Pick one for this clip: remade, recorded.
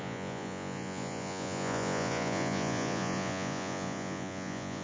remade